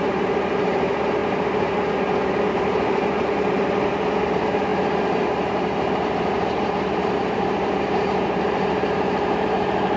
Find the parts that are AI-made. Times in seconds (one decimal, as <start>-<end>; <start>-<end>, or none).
0.0-1.2; 2.3-10.0